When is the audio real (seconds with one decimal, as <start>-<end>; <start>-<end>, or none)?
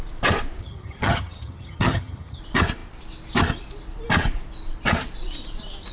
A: 0.0-0.6; 2.4-5.9